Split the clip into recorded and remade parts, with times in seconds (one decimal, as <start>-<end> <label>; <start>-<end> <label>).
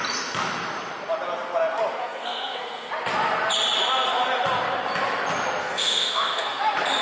0.0-2.0 recorded; 2.0-2.9 remade; 2.9-5.6 recorded; 5.6-6.6 remade; 6.6-7.0 recorded